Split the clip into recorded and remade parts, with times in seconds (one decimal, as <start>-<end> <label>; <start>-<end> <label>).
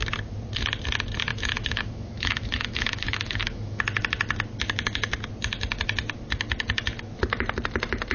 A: 0.0-1.3 recorded; 1.3-3.8 remade; 3.8-8.1 recorded